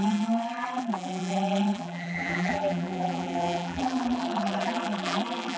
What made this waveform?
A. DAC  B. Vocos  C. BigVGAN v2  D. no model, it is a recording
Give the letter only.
C